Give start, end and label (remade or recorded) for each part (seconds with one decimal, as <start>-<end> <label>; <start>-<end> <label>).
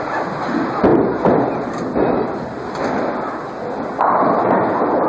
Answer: 0.0-5.1 recorded